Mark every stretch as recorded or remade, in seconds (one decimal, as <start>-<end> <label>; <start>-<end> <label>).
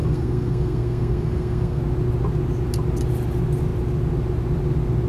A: 0.0-1.8 remade; 1.8-5.1 recorded